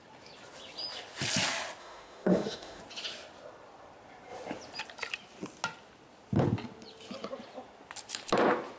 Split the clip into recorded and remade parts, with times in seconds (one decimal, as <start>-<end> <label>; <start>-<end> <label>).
0.0-1.8 recorded; 1.8-2.8 remade; 2.8-8.8 recorded